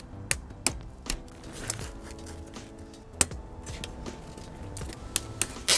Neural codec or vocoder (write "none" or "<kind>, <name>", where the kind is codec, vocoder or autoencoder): none